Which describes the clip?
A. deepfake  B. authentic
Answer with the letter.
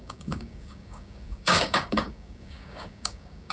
A